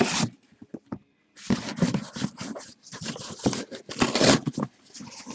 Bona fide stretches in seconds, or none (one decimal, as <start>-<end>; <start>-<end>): 0.0-5.3